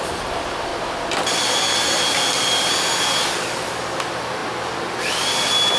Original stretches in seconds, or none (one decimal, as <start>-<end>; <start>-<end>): 0.7-2.8; 4.4-5.1

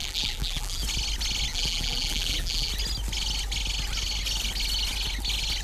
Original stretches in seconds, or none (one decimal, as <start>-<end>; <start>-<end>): 0.8-1.5; 2.7-5.6

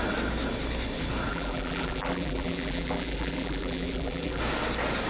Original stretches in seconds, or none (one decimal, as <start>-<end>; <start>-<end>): 0.0-1.3; 4.4-5.1

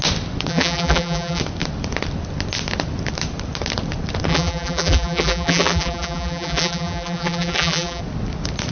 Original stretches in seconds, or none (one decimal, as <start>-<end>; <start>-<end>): 0.0-0.5; 1.4-4.3; 8.0-8.7

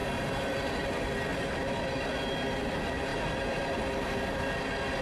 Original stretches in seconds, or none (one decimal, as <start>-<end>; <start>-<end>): 0.0-5.0

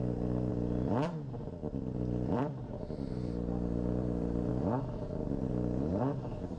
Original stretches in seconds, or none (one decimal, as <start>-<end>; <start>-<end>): 0.0-0.5; 4.5-5.9